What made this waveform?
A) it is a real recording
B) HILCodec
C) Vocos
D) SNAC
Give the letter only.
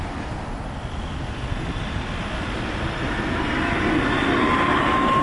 A